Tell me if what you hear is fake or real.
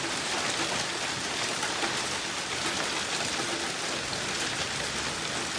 real